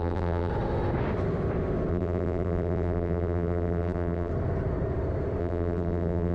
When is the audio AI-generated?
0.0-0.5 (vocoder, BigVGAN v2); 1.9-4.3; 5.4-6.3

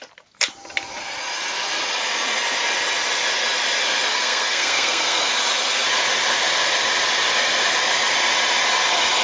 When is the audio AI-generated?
4.1-5.3 (codec, SNAC)

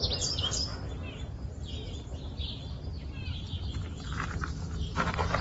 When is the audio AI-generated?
none

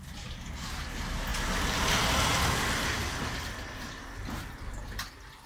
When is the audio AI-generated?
none

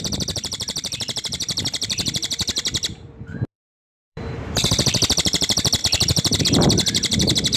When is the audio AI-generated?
0.0-7.6 (vocoder, BigVGAN v2)

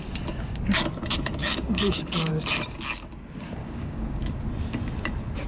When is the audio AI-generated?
1.4-2.3 (codec, DAC); 3.6-4.3

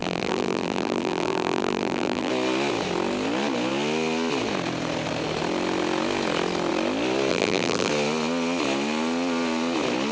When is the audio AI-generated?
0.0-2.3 (vocoder, BigVGAN v2); 7.3-7.9

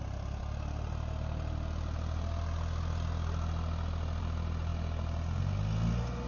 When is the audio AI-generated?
none